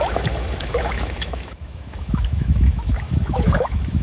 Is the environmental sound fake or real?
fake